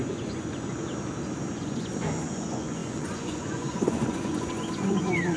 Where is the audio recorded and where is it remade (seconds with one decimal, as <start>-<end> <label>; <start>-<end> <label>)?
0.0-0.9 remade; 0.9-1.5 recorded; 1.5-5.4 remade

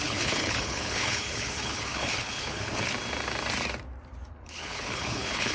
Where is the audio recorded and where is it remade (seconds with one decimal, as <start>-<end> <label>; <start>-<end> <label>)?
0.0-2.9 remade; 2.9-4.3 recorded; 4.3-5.5 remade

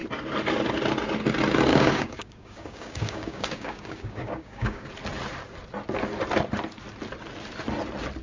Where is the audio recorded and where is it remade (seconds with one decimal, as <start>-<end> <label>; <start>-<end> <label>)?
0.0-1.7 recorded; 1.7-4.9 remade; 4.9-8.2 recorded

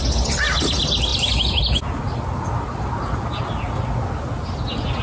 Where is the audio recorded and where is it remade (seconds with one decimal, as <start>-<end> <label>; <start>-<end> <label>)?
0.0-5.0 recorded

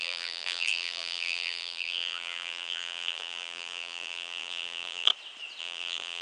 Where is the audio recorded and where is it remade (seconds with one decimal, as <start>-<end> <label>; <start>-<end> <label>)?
0.0-5.1 remade; 5.1-5.6 recorded; 5.6-6.2 remade

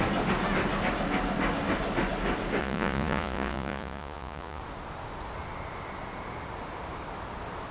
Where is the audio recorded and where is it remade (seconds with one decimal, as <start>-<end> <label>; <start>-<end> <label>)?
0.0-2.6 recorded; 2.6-4.6 remade; 4.6-7.7 recorded

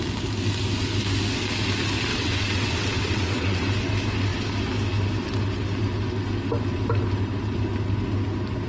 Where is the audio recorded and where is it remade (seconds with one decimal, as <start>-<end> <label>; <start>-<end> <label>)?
0.0-2.1 recorded; 2.1-3.7 remade; 3.7-8.7 recorded

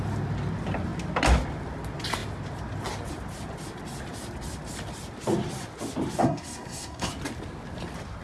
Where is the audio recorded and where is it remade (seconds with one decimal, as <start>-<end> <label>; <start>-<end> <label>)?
0.0-6.2 recorded; 6.2-7.1 remade; 7.1-8.2 recorded